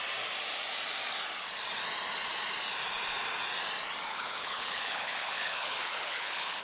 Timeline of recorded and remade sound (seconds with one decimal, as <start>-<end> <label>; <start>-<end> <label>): 0.0-4.1 recorded; 4.1-6.6 remade